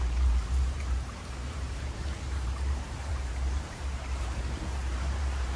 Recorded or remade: remade